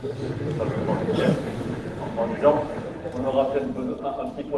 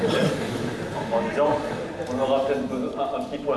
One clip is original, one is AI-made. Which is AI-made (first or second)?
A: first